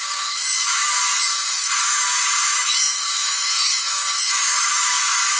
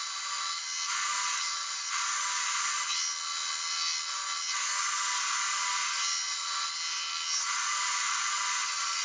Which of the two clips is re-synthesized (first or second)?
first